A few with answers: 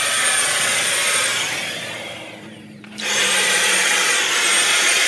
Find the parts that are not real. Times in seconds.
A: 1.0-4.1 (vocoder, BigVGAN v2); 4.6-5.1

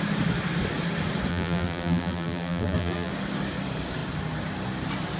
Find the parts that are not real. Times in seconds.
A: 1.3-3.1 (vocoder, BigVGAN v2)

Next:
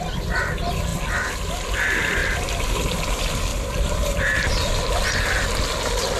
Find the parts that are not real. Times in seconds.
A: 3.5-4.5 (vocoder, BigVGAN v2)

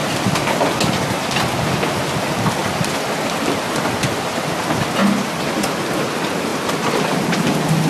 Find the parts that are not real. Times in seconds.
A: 2.6-4.6 (vocoder, BigVGAN v2); 5.0-5.6; 6.5-7.9